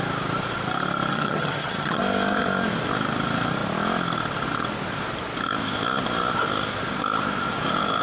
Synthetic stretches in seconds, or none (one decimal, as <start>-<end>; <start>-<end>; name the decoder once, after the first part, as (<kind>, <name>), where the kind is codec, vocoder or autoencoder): 1.1-2.0 (vocoder, HiFi-GAN)

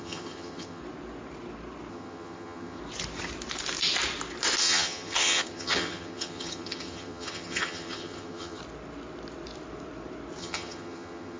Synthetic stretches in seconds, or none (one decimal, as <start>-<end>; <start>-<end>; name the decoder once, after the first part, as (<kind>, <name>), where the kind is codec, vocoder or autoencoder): 0.0-0.8 (vocoder, HiFi-GAN); 1.9-2.8; 4.6-8.6; 10.4-11.4

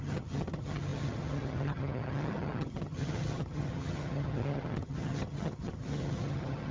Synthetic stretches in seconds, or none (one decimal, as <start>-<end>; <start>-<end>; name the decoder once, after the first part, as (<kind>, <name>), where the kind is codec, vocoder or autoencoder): 0.0-6.7 (vocoder, HiFi-GAN)